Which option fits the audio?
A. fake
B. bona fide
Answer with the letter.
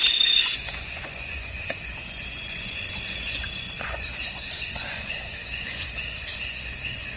A